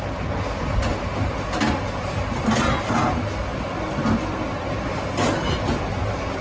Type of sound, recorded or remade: recorded